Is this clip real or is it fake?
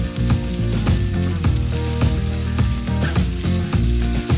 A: real